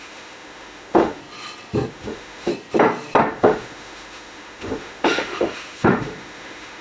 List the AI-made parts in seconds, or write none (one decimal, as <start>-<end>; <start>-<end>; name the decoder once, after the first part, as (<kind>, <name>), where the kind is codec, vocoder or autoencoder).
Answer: 0.0-1.2 (autoencoder, DAC-VAE); 1.9-2.5; 3.2-6.8